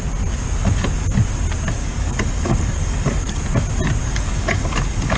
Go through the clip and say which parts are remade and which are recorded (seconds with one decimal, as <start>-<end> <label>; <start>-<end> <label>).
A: 0.0-1.8 recorded; 1.8-3.4 remade; 3.4-4.0 recorded; 4.0-5.2 remade

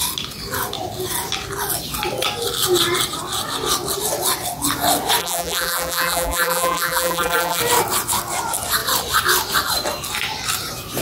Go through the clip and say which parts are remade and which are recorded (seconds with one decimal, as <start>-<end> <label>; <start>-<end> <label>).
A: 0.0-5.2 recorded; 5.2-7.6 remade; 7.6-11.0 recorded

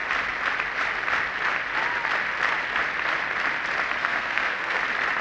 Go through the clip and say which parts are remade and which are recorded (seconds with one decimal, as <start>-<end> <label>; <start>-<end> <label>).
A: 0.0-4.0 recorded; 4.0-4.8 remade; 4.8-5.2 recorded

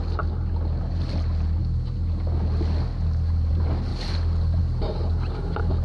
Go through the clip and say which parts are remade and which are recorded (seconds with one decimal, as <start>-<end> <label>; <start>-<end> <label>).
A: 0.0-5.8 recorded